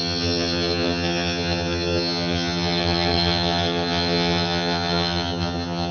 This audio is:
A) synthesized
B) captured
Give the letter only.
A